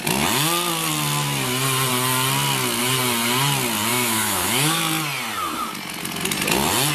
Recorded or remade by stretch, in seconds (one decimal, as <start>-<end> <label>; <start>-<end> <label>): 0.0-3.9 recorded; 3.9-4.8 remade; 4.8-6.9 recorded